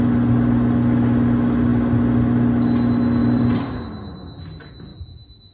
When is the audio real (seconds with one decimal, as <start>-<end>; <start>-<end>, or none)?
0.0-3.2; 3.8-5.5